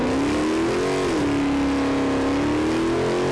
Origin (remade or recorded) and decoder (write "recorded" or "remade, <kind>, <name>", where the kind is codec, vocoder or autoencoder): recorded